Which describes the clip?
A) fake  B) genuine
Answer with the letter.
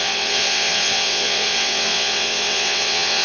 A